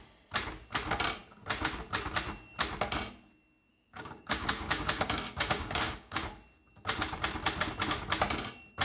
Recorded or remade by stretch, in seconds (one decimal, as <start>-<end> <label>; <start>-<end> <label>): 0.0-3.7 recorded; 3.7-6.2 remade; 6.2-8.8 recorded